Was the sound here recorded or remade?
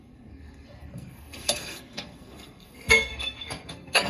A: remade